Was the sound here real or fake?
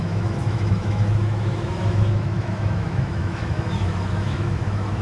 fake